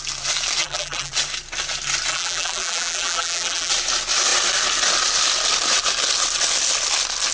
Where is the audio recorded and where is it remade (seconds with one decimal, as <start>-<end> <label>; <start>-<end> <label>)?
0.0-0.6 recorded; 0.6-1.1 remade; 1.1-2.1 recorded; 2.1-3.7 remade; 3.7-7.3 recorded